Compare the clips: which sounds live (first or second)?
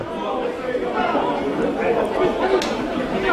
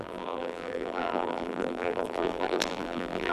first